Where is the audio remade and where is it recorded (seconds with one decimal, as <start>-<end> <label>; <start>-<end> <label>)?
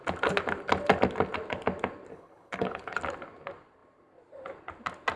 0.0-2.1 recorded; 2.1-3.0 remade; 3.0-5.2 recorded